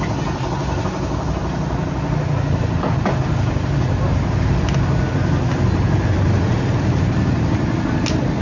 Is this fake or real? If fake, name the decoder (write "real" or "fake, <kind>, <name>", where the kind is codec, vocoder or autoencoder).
real